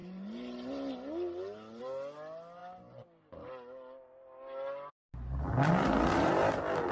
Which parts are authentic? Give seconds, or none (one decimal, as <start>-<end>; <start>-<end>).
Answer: 0.0-6.9